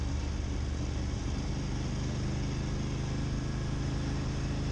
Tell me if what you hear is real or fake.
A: real